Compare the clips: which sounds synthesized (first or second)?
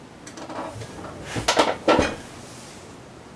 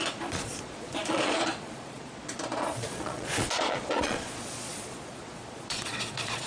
second